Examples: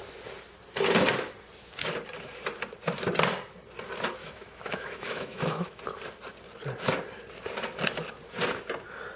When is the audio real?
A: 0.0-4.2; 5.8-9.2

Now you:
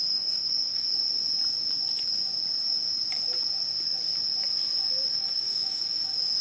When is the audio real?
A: 0.9-5.3; 5.8-6.4

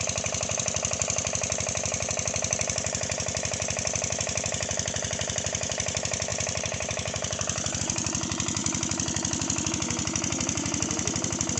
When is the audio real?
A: 8.6-9.7

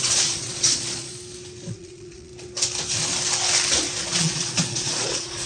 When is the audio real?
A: 1.1-1.7; 2.3-4.0

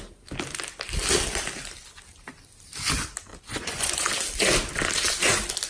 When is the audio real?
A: 0.0-3.3; 4.1-5.7

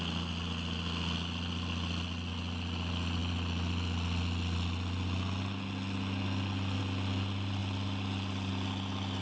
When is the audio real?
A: 0.0-9.2

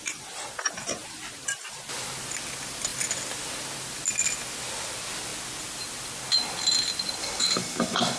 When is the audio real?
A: 0.0-7.2